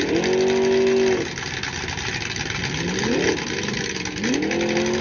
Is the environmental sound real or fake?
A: real